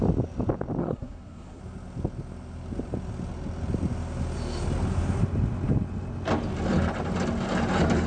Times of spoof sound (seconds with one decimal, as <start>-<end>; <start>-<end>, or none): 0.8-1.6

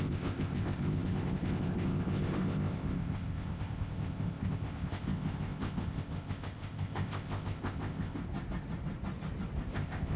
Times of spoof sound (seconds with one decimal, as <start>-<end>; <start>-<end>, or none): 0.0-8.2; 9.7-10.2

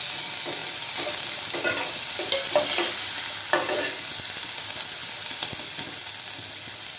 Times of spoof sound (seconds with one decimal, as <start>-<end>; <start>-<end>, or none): 5.0-5.8